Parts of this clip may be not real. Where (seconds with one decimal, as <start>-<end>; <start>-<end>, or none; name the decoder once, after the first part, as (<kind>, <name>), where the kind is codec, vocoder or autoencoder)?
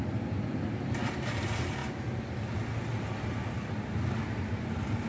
none